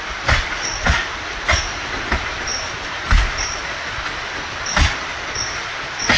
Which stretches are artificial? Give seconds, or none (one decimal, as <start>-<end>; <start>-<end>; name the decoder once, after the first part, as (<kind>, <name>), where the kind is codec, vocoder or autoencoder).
none